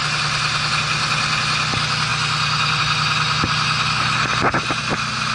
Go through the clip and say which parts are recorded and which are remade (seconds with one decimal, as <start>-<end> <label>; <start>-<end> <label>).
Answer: 0.0-5.3 recorded